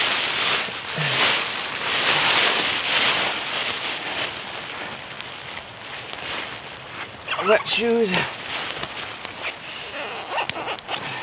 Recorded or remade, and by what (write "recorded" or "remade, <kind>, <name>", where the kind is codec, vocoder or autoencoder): recorded